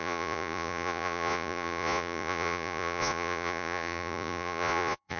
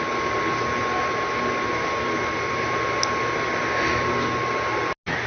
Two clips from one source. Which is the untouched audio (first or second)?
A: second